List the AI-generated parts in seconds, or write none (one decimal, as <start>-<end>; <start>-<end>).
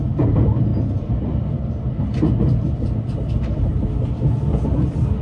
none